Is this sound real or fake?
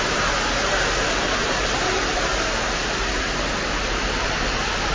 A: real